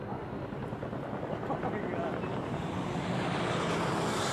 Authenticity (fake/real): real